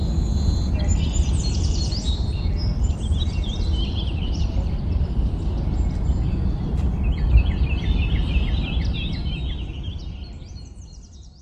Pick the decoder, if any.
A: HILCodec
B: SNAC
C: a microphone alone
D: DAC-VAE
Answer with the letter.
C